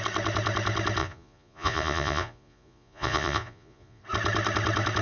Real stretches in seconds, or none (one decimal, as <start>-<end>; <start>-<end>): 0.0-1.0; 4.0-5.0

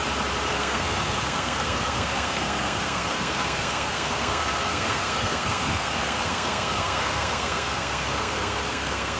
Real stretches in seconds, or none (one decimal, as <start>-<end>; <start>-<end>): 0.0-0.5

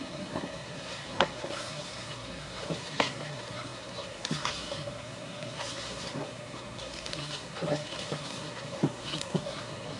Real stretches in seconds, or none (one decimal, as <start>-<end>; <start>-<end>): none

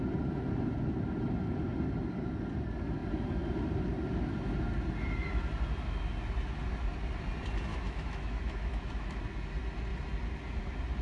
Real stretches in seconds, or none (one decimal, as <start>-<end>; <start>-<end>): 0.0-7.7; 9.2-11.0

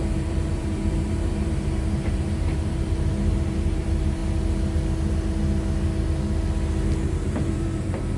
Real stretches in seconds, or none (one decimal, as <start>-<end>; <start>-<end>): 4.2-7.1

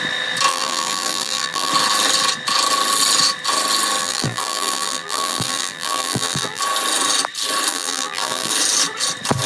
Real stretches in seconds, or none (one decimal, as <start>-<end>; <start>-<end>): 0.0-0.5; 1.7-4.0; 6.6-7.7; 8.5-9.5

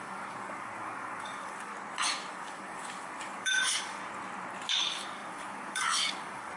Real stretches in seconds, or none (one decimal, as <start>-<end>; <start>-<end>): 1.7-2.3; 4.0-4.8